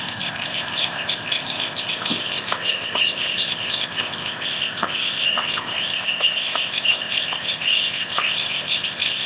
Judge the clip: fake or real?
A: fake